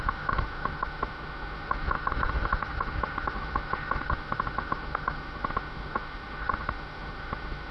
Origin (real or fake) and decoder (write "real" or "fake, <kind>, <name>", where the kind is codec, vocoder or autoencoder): fake, autoencoder, DAC-VAE